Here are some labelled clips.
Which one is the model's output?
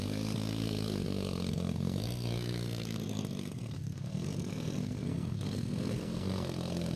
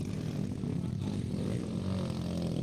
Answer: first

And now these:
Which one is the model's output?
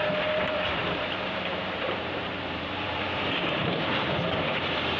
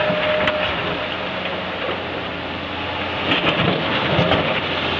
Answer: first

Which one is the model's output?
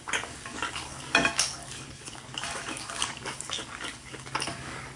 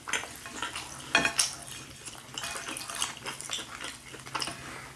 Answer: first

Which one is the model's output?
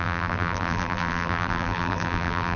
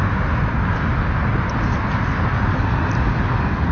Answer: first